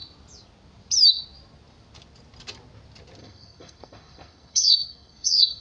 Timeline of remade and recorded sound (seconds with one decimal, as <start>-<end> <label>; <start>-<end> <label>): 0.0-3.2 recorded; 3.2-5.6 remade